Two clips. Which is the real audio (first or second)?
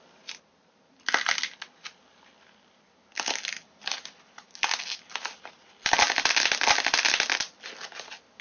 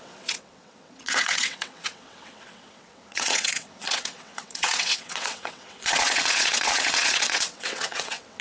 first